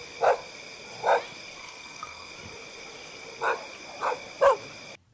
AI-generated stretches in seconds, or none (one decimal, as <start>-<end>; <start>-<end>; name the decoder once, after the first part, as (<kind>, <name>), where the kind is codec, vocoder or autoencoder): 1.6-2.3 (codec, SNAC)